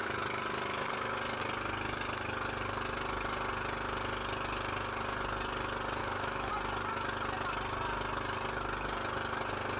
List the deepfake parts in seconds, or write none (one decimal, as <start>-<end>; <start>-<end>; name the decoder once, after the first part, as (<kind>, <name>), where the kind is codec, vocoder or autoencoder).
6.0-6.5 (autoencoder, DAC-VAE)